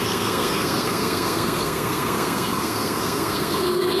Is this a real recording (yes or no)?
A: no